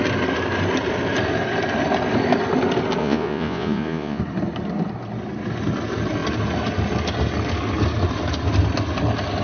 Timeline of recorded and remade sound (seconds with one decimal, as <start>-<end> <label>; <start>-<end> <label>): 0.0-3.0 recorded; 3.0-4.2 remade; 4.2-9.4 recorded